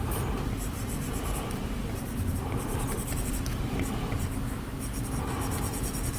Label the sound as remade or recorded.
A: recorded